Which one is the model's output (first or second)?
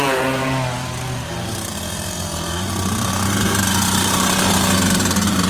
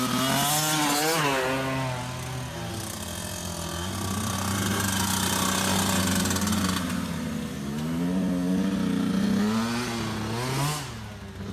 first